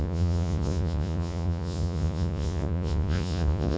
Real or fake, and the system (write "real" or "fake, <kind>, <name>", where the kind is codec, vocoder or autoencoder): fake, vocoder, Vocos